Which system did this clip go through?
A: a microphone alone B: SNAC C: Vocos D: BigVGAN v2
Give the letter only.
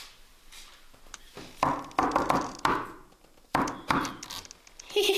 A